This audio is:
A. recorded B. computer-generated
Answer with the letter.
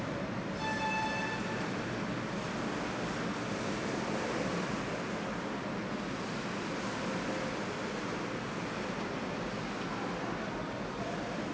A